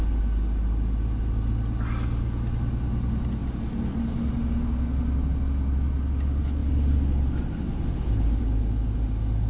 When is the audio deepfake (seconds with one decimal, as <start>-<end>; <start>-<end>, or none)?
none